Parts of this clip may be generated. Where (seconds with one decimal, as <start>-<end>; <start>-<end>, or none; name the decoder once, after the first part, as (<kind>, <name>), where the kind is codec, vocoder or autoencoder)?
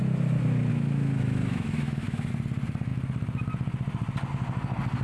0.7-2.3 (autoencoder, DAC-VAE)